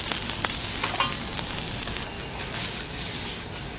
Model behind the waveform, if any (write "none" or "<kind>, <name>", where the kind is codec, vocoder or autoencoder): none